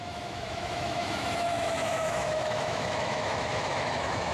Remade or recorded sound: remade